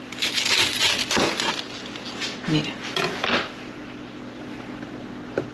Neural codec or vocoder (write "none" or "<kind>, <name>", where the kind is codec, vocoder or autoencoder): none